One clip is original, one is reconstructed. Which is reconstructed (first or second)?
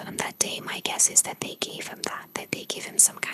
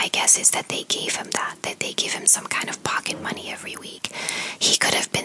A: first